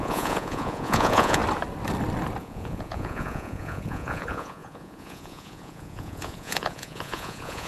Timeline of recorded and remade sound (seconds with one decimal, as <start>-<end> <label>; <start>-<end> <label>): 0.0-1.4 remade; 1.4-2.4 recorded; 2.4-7.7 remade